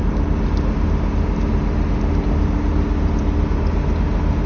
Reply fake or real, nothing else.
real